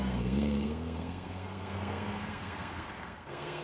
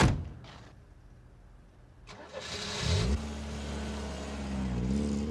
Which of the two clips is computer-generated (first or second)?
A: first